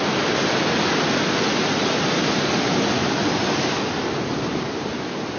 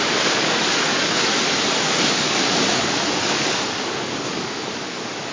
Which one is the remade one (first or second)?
second